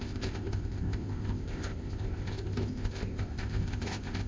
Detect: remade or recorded remade